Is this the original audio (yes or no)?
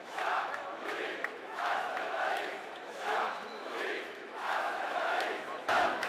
no